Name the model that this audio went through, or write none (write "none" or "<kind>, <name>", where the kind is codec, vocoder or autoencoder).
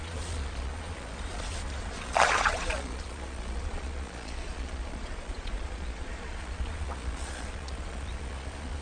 vocoder, Vocos